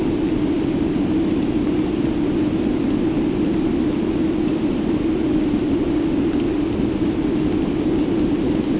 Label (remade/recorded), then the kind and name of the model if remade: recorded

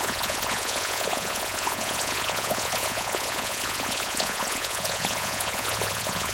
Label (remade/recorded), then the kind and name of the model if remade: remade, vocoder, Vocos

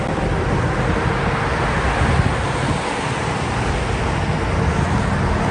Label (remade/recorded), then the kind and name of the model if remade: recorded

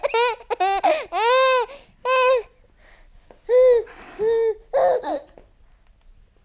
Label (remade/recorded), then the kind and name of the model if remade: recorded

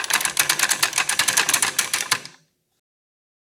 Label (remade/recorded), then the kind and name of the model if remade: recorded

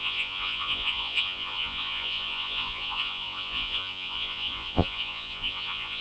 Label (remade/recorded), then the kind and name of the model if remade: remade, vocoder, Vocos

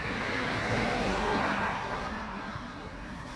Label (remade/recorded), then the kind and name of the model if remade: remade, codec, SNAC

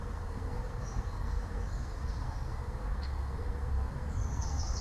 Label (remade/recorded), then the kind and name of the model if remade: remade, codec, SNAC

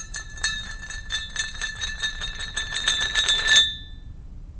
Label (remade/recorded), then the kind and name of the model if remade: remade, vocoder, BigVGAN v2